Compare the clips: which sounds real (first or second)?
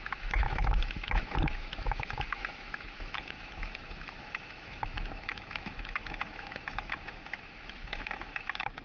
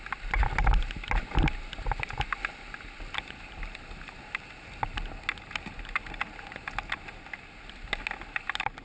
second